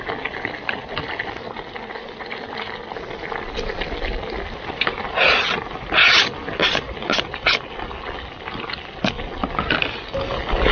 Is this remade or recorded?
recorded